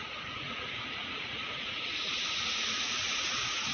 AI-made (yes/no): yes